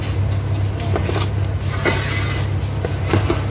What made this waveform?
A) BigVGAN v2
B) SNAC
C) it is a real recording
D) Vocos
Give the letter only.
C